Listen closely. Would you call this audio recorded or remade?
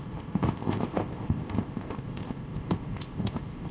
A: remade